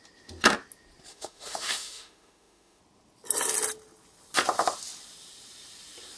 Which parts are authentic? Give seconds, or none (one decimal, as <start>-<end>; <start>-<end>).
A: 0.0-1.1; 2.8-6.2